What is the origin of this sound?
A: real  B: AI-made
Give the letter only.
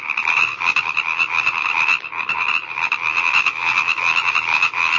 A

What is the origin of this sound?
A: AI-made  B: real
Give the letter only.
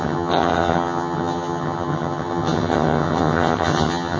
A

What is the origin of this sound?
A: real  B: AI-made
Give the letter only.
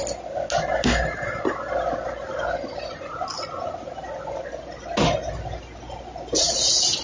A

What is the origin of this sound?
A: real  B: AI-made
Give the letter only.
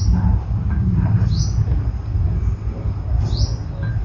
A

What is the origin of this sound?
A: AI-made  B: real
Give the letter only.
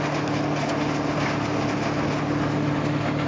B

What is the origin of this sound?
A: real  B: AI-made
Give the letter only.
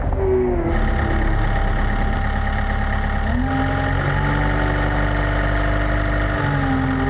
A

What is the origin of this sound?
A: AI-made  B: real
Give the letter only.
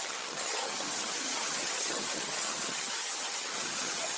A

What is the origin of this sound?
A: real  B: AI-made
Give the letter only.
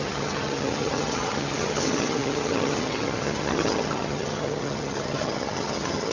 B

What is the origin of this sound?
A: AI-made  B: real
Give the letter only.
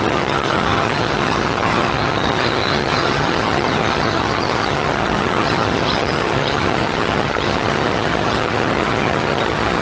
A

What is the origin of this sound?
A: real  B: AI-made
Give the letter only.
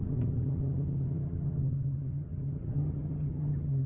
B